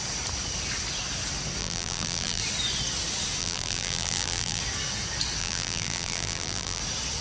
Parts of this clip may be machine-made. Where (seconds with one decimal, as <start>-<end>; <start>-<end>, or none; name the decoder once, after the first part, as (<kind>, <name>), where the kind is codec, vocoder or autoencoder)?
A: 1.6-2.4 (vocoder, BigVGAN v2); 3.4-4.6; 5.4-6.8

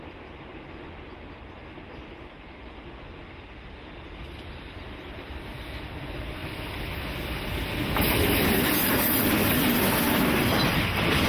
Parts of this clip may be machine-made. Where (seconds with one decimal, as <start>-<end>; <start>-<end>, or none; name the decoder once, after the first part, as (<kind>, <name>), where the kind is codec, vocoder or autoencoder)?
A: 6.4-7.0 (vocoder, BigVGAN v2)

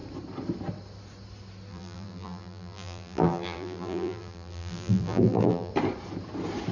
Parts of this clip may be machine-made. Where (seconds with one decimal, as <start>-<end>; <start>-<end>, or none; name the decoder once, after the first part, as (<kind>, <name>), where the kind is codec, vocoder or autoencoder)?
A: 1.7-5.7 (vocoder, BigVGAN v2)

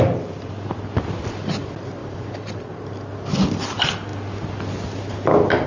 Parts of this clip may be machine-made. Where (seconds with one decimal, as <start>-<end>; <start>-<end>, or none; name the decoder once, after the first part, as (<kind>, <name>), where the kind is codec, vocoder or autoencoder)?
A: 2.0-2.6 (vocoder, BigVGAN v2)

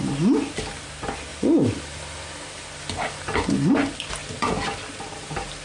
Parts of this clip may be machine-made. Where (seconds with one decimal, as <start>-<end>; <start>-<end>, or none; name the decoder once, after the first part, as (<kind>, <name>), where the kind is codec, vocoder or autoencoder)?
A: 4.2-5.6 (vocoder, BigVGAN v2)

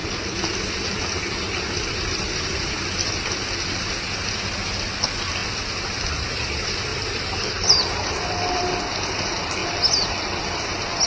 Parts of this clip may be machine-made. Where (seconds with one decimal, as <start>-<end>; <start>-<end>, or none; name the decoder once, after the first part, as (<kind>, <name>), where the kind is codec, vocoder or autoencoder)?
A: 6.9-8.6 (vocoder, BigVGAN v2)

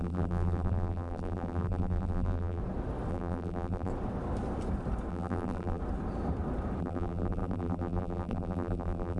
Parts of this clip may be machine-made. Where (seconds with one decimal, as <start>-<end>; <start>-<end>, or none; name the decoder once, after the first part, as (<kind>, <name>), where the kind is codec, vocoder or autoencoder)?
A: 0.0-2.6 (vocoder, BigVGAN v2); 3.1-3.9; 5.1-5.8; 6.8-9.2